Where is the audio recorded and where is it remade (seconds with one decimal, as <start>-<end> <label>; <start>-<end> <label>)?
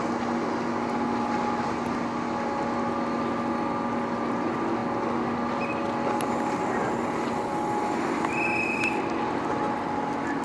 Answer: 0.0-10.4 recorded